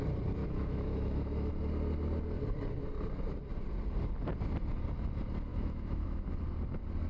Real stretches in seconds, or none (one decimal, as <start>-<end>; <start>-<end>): 0.0-0.4; 1.5-5.5; 6.4-7.1